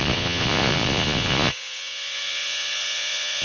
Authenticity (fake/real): fake